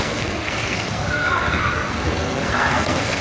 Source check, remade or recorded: remade